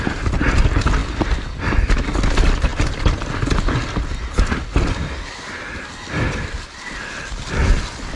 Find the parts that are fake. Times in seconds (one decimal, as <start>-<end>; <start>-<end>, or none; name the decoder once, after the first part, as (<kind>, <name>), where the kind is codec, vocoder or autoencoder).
0.0-2.7 (vocoder, BigVGAN v2); 5.8-8.2